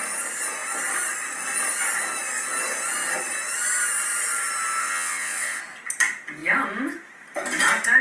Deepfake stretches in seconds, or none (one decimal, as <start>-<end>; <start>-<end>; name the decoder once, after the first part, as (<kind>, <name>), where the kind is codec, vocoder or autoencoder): 4.8-5.6 (vocoder, WaveNeXt)